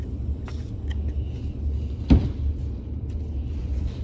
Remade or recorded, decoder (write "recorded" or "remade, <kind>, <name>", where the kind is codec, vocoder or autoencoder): recorded